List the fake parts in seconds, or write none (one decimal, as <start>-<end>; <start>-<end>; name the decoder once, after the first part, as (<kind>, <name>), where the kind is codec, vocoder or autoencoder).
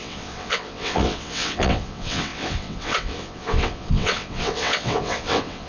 0.0-5.7 (vocoder, WaveNeXt)